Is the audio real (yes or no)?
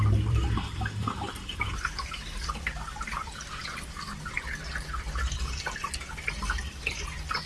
no